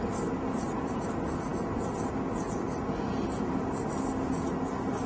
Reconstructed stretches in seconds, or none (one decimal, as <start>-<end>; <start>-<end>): none